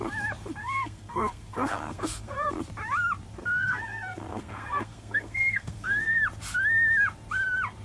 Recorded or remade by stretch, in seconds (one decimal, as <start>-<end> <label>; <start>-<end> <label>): 0.0-0.6 recorded; 0.6-2.5 remade; 2.5-3.4 recorded; 3.4-6.2 remade; 6.2-7.8 recorded